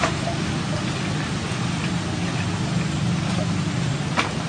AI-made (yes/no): no